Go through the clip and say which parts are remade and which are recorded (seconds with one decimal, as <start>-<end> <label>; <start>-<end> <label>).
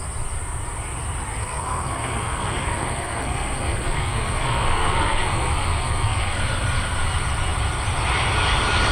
0.0-1.4 recorded; 1.4-6.4 remade; 6.4-8.9 recorded